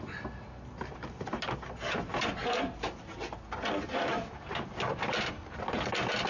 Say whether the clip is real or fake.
real